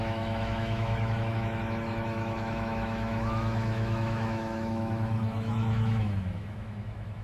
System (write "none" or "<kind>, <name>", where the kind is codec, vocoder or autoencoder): autoencoder, DAC-VAE